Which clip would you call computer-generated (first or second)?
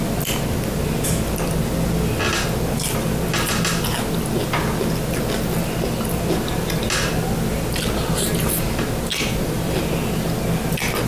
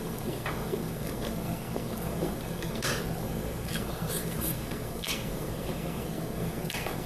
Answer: second